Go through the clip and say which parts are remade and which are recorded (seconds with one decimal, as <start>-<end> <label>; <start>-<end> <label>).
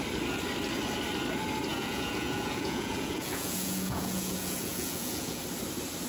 0.0-1.7 recorded; 1.7-5.4 remade; 5.4-6.1 recorded